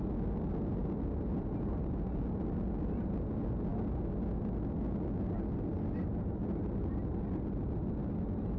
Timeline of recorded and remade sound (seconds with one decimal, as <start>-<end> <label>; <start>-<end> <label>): 0.0-8.6 recorded